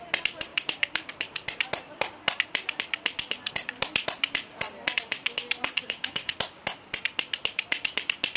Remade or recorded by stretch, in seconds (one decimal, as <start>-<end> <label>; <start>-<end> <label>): 0.0-5.8 recorded; 5.8-6.3 remade; 6.3-8.4 recorded